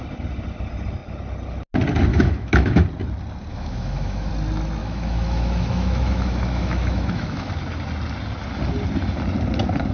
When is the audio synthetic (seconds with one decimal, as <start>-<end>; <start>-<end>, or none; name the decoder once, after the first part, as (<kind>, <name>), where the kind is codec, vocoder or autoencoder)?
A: 2.1-2.8 (autoencoder, DAC-VAE); 3.5-4.3; 4.8-7.5